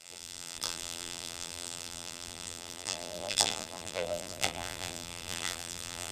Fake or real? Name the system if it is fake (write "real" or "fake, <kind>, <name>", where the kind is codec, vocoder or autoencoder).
fake, vocoder, BigVGAN v2